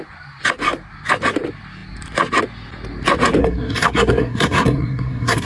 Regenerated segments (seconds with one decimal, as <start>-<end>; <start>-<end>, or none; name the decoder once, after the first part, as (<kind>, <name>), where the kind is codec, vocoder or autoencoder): 3.4-5.5 (codec, SNAC)